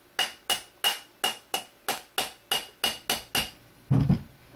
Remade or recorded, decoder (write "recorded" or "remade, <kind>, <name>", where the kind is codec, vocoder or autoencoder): recorded